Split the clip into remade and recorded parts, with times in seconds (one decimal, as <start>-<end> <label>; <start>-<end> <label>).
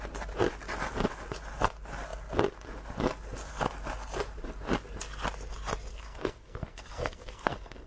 0.0-5.9 recorded; 5.9-7.9 remade